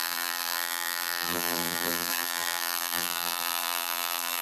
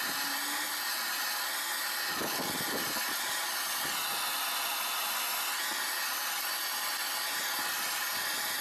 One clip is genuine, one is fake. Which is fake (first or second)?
first